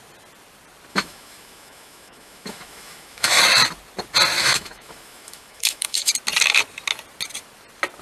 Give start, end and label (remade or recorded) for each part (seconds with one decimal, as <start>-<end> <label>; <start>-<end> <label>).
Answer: 0.0-0.9 recorded; 0.9-3.4 remade; 3.4-4.4 recorded; 4.4-6.1 remade; 6.1-8.0 recorded